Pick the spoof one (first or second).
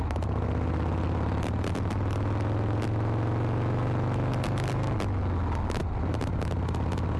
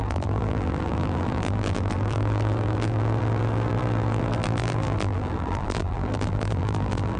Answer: second